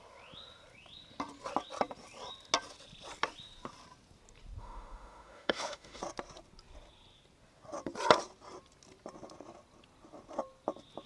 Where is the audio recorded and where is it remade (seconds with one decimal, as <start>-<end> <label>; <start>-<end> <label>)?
0.0-4.6 recorded; 4.6-6.0 remade; 6.0-11.1 recorded